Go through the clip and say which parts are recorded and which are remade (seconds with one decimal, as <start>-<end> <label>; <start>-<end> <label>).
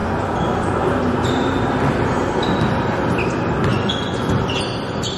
0.0-3.7 recorded; 3.7-4.4 remade; 4.4-5.2 recorded